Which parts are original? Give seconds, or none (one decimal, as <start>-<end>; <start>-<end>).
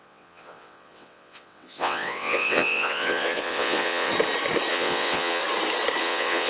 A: 4.1-4.7; 5.4-6.0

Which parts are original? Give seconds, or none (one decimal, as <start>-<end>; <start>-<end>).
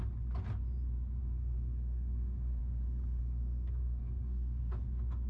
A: 0.0-1.2; 2.6-3.2; 4.6-5.3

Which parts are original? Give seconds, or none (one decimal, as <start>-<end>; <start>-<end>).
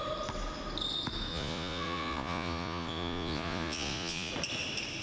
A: 0.0-1.3; 4.3-5.0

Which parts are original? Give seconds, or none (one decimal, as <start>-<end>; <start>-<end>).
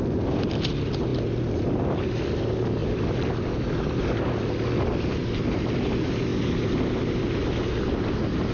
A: 0.0-8.5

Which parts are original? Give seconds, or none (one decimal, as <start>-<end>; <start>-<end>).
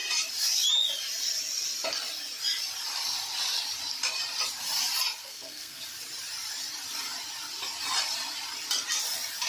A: 0.0-5.2; 5.8-9.5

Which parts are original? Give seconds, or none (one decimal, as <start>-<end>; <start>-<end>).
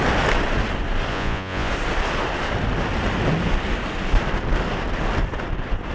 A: 0.0-1.1; 1.7-5.9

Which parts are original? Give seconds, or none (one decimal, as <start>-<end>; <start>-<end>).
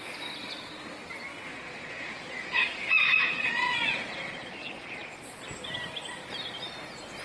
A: 0.0-1.5; 5.4-7.2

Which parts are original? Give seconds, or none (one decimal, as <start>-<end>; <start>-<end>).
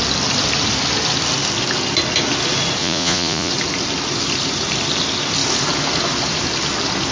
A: 0.0-2.8; 3.5-7.1